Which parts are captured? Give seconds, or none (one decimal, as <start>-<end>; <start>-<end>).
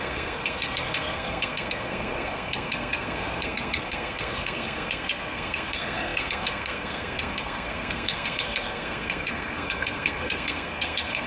none